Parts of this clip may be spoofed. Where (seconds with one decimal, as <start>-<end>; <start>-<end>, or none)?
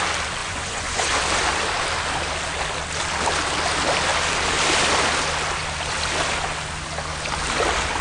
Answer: 0.4-1.2